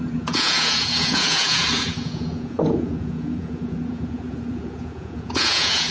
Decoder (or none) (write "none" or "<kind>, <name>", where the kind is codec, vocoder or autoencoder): vocoder, Vocos